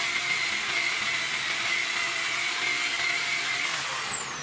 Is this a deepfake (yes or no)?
no